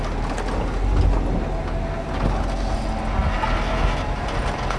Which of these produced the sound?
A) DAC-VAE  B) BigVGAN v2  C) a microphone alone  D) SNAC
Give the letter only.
C